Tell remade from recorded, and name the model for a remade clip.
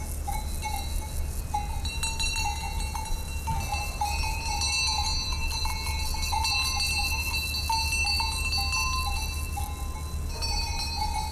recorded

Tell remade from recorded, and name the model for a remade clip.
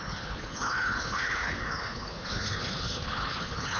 remade, codec, HILCodec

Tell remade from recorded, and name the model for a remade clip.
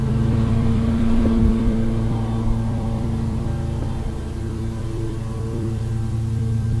remade, vocoder, BigVGAN v2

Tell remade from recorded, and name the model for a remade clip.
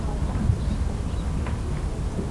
recorded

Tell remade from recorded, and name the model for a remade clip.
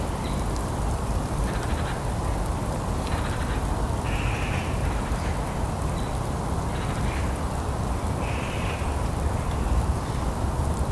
remade, vocoder, BigVGAN v2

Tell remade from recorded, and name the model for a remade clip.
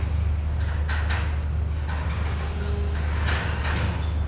recorded